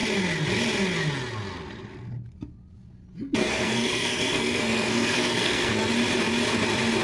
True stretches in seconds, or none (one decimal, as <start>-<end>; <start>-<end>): 0.0-3.4; 5.9-7.0